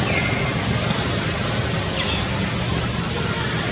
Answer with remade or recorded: recorded